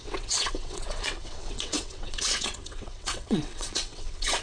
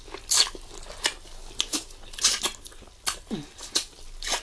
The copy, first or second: first